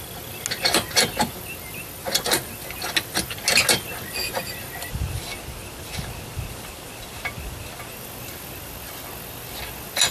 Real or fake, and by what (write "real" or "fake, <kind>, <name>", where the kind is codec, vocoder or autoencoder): real